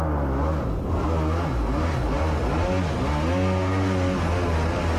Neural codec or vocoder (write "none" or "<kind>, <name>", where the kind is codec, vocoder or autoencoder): none